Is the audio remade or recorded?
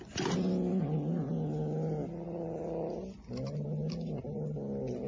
recorded